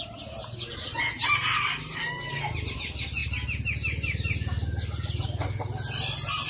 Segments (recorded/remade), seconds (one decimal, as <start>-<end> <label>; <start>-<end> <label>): 0.0-6.5 recorded